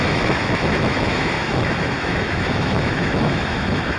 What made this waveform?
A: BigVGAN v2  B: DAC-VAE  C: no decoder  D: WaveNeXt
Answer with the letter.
B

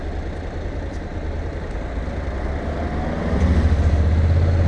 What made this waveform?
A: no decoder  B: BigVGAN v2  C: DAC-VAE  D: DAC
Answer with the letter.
A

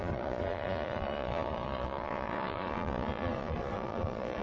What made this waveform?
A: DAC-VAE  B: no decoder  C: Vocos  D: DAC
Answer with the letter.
C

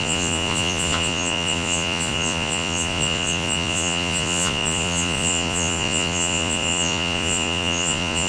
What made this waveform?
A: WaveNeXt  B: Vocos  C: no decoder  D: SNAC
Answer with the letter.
B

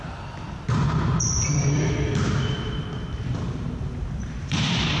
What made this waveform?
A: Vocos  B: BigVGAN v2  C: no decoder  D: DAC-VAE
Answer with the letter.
B